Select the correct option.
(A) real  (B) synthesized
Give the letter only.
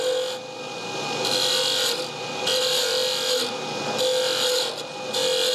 A